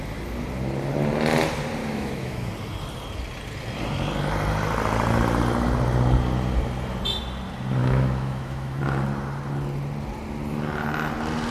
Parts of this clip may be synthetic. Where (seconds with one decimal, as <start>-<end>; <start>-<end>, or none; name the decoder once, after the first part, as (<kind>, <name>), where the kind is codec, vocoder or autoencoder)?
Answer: 1.8-2.5 (autoencoder, DAC-VAE); 7.8-8.8